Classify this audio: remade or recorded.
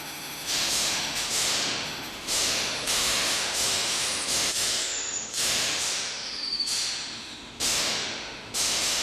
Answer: remade